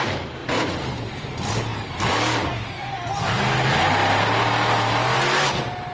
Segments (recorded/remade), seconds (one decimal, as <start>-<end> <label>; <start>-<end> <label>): 0.0-5.9 recorded